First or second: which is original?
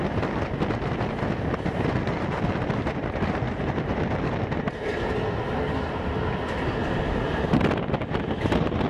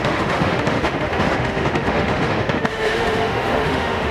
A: first